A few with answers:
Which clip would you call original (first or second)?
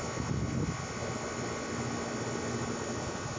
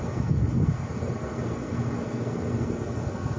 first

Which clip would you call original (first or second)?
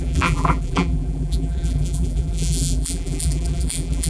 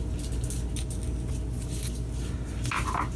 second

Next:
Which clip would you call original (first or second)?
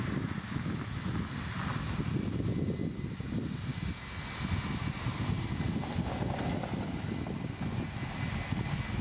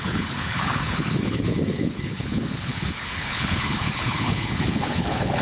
first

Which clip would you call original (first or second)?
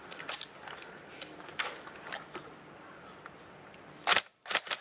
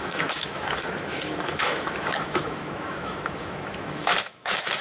first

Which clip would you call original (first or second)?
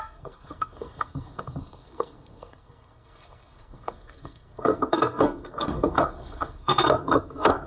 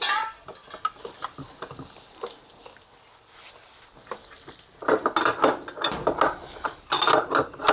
second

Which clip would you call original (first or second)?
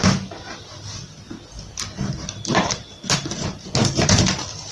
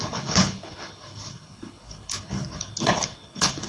first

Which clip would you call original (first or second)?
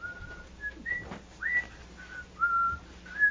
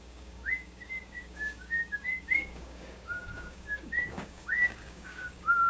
first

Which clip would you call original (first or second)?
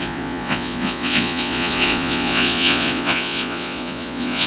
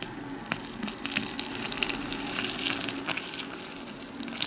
second